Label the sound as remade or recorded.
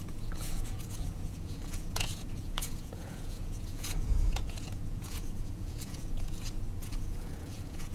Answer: remade